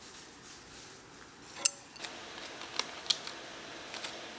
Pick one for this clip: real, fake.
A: real